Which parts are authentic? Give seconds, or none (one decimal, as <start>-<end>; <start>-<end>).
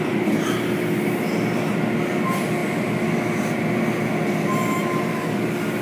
0.0-5.8